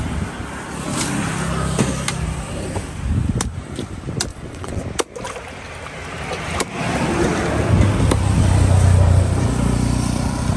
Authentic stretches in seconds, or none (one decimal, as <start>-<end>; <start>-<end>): 0.0-4.3; 4.8-10.6